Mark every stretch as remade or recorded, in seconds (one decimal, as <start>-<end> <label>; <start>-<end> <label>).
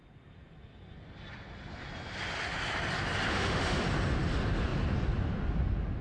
0.0-3.3 recorded; 3.3-3.8 remade; 3.8-6.0 recorded